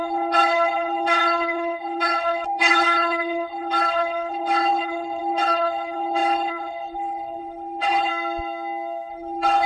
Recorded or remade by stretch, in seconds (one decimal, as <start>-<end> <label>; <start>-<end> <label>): 0.0-8.1 remade; 8.1-9.1 recorded; 9.1-9.7 remade